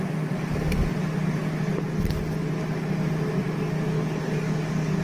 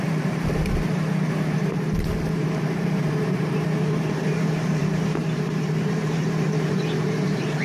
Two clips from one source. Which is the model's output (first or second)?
second